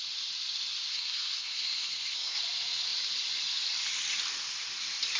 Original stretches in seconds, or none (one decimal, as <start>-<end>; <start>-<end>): 0.0-0.9; 2.4-5.2